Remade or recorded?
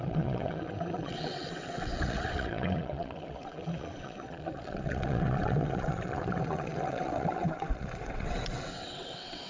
remade